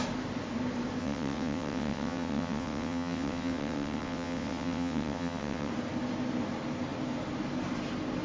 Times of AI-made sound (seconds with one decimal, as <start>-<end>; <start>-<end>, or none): 1.0-5.7